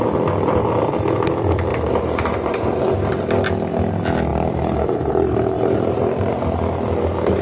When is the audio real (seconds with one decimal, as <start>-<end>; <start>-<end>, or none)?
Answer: 0.0-1.7; 2.8-4.3; 6.3-7.4